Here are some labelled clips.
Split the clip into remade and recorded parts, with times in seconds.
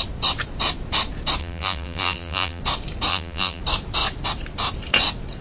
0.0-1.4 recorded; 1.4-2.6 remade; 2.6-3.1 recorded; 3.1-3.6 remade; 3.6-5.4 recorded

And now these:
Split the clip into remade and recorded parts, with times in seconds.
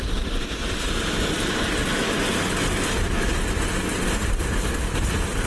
0.0-1.8 remade; 1.8-5.1 recorded; 5.1-5.5 remade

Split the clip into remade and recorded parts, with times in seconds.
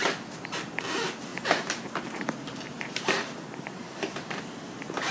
0.0-1.3 recorded; 1.3-4.4 remade; 4.4-5.1 recorded